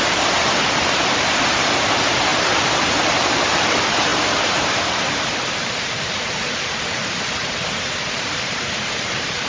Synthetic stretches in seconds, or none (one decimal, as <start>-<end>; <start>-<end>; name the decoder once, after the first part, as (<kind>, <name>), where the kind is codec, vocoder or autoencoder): 0.0-9.5 (vocoder, BigVGAN v2)